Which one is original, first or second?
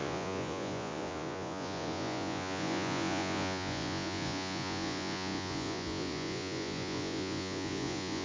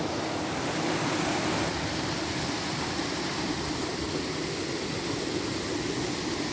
second